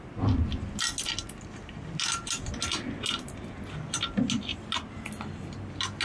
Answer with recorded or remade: recorded